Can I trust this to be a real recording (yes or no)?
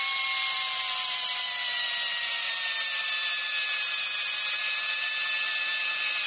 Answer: yes